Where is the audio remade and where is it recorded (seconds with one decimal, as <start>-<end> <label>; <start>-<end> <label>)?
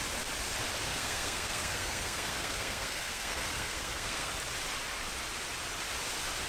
0.0-0.9 recorded; 0.9-4.3 remade; 4.3-6.5 recorded